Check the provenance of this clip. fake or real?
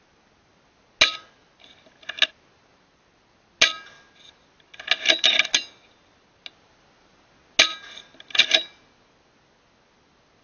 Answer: real